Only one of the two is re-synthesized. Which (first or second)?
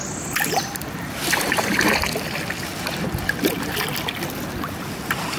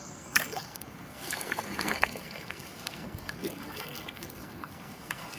second